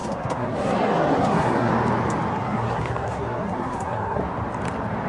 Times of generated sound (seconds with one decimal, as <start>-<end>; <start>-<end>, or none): 0.0-1.7; 2.3-4.2